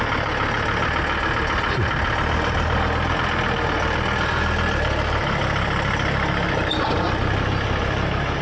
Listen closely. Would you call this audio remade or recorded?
recorded